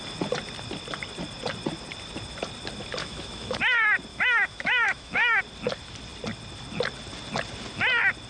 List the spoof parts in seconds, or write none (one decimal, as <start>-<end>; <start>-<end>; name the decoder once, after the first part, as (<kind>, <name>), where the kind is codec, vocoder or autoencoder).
3.0-3.6 (autoencoder, DAC-VAE); 4.1-5.4